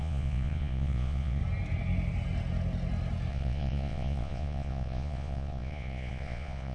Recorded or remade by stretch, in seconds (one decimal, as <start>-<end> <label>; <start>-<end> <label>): 0.0-1.4 remade; 1.4-3.3 recorded; 3.3-6.7 remade